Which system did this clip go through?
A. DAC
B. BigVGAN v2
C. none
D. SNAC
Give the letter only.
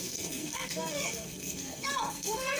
D